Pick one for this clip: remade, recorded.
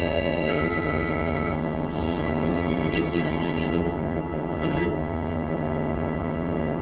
remade